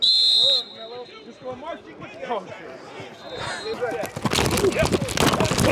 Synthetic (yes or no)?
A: no